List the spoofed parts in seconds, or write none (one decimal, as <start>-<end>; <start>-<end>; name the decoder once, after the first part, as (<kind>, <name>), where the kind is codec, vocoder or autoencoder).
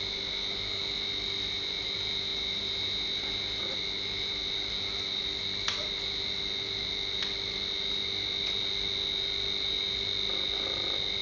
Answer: none